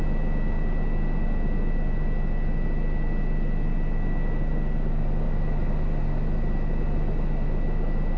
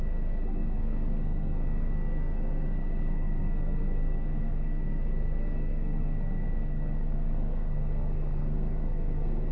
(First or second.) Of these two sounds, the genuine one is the first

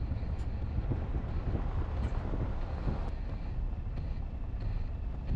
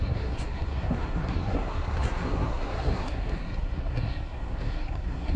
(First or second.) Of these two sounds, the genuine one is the first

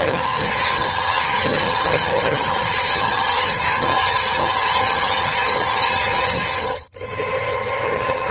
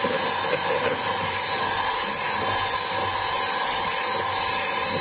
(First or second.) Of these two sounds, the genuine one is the second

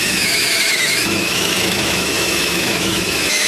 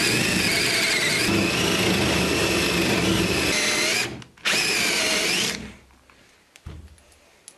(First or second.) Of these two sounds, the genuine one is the second